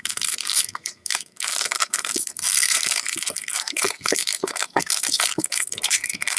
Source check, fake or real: fake